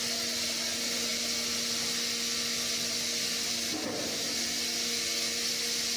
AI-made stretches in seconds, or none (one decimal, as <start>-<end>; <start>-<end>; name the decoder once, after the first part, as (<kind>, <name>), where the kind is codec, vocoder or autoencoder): none